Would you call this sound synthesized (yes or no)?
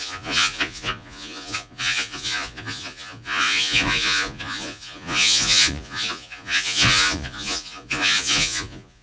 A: yes